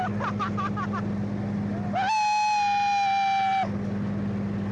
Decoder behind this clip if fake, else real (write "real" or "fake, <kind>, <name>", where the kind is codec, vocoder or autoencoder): real